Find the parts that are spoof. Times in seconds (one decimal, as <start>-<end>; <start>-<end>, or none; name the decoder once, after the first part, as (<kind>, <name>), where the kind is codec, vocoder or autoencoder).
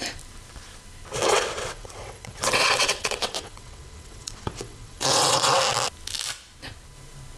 1.2-5.6 (vocoder, WaveNeXt)